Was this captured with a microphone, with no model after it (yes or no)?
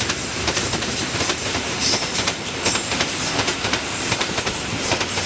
no